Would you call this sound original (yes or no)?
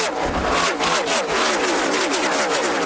yes